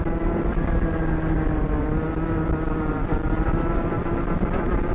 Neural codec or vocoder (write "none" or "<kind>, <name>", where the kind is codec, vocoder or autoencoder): none